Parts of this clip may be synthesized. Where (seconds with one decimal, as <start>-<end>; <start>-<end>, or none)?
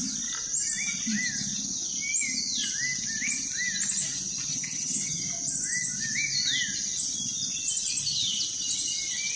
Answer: 4.5-5.2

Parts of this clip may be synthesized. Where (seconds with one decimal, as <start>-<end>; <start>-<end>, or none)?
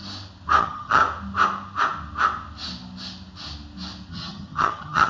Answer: 0.6-1.0; 4.1-5.1